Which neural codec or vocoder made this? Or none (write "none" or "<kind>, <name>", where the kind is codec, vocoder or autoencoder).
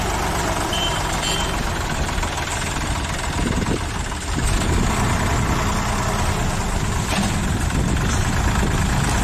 none